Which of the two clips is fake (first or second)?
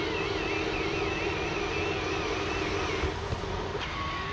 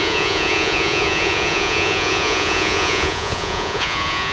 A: second